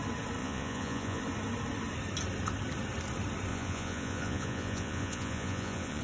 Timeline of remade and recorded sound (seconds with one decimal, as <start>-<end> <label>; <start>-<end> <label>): 0.0-0.4 recorded; 0.4-1.2 remade; 1.2-3.5 recorded; 3.5-6.0 remade